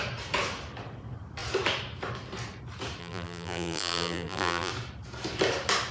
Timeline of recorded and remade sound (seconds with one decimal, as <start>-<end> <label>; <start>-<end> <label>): 0.0-3.0 recorded; 3.0-4.7 remade; 4.7-5.9 recorded